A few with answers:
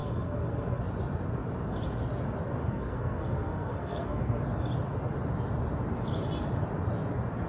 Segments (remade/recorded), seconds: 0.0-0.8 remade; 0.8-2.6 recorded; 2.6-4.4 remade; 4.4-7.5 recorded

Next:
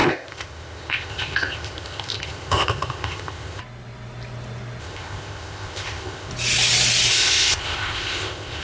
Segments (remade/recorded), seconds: 0.0-3.6 remade; 3.6-4.8 recorded; 4.8-6.3 remade; 6.3-7.1 recorded; 7.1-8.6 remade

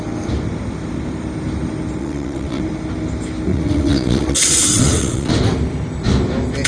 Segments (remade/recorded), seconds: 0.0-2.0 recorded; 2.0-2.6 remade; 2.6-3.5 recorded; 3.5-5.3 remade; 5.3-6.7 recorded

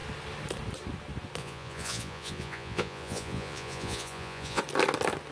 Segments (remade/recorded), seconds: 0.0-1.4 recorded; 1.4-4.6 remade; 4.6-5.3 recorded

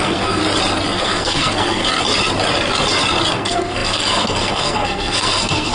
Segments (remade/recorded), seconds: 0.0-0.4 remade; 0.4-1.0 recorded; 1.0-1.8 remade; 1.8-3.3 recorded; 3.3-5.7 remade

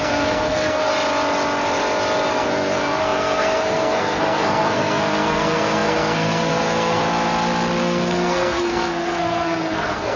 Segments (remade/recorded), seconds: 0.0-0.9 remade; 0.9-2.3 recorded; 2.3-7.0 remade; 7.0-7.8 recorded; 7.8-10.2 remade